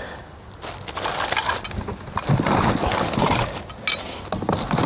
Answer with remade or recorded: recorded